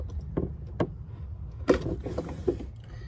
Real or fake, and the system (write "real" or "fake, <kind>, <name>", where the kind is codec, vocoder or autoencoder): real